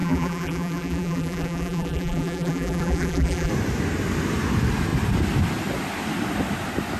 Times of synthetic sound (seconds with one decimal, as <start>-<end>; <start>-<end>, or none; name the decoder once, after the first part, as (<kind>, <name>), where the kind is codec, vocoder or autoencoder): 0.0-3.5 (vocoder, BigVGAN v2)